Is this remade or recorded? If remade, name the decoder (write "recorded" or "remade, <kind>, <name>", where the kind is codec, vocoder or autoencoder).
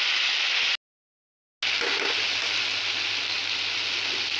recorded